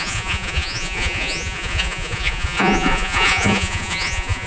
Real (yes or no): no